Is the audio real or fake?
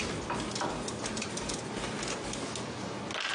real